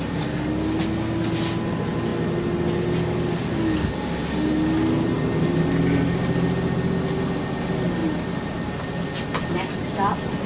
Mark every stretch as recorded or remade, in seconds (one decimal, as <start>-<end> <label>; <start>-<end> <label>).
0.0-10.5 recorded

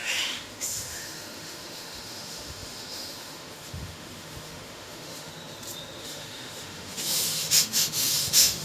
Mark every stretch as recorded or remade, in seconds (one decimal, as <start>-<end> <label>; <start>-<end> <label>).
0.0-5.3 remade; 5.3-6.0 recorded; 6.0-8.6 remade

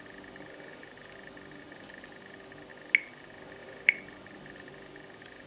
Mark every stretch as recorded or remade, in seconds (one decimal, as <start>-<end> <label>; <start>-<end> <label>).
0.0-3.6 recorded; 3.6-4.4 remade; 4.4-5.5 recorded

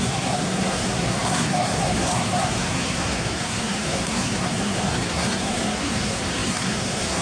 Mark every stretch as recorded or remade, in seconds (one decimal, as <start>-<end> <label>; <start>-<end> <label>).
0.0-7.2 remade

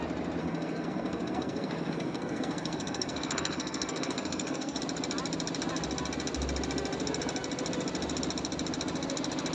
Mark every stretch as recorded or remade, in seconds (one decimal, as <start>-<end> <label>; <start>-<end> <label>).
0.0-0.4 recorded; 0.4-4.8 remade; 4.8-9.5 recorded

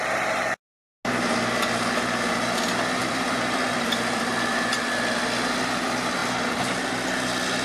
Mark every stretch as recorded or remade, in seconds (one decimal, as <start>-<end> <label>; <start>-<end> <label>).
0.0-3.0 recorded; 3.0-4.3 remade; 4.3-6.2 recorded; 6.2-6.9 remade; 6.9-7.6 recorded

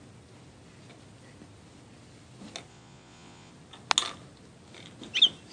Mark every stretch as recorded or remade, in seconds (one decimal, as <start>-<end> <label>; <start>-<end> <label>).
0.0-2.7 recorded; 2.7-3.5 remade; 3.5-5.5 recorded